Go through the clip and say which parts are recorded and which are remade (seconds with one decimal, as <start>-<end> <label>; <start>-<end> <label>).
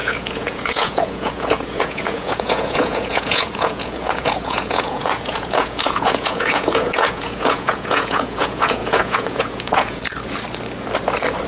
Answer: 0.0-10.1 remade; 10.1-11.5 recorded